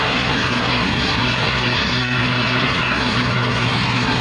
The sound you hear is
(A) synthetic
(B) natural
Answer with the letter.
A